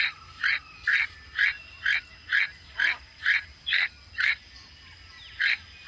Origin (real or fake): real